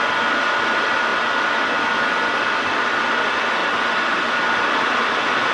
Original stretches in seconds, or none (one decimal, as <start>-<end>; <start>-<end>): 0.0-5.5